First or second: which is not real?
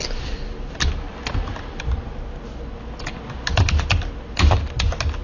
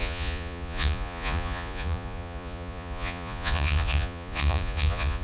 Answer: second